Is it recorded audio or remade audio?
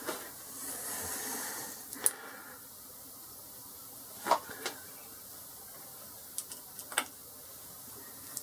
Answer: recorded